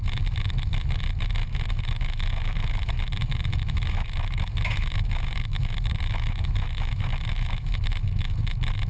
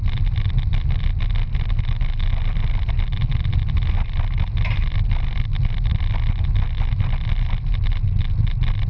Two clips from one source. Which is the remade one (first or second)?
first